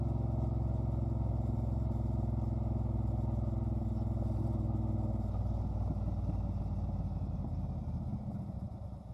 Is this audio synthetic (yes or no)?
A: no